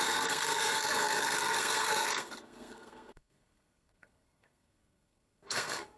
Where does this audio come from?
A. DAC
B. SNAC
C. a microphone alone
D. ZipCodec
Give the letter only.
B